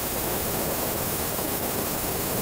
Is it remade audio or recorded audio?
remade